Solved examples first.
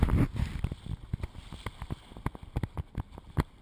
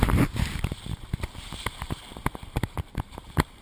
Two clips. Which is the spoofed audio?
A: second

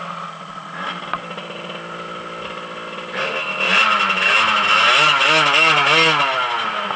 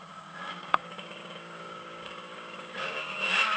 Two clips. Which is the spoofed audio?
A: second